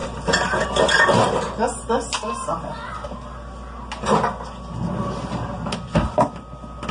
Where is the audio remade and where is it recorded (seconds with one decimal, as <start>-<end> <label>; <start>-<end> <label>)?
0.0-6.9 recorded